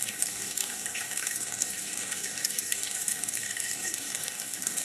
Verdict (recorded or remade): remade